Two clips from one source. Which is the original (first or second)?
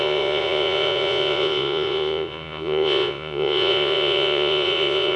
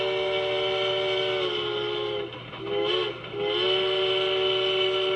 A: second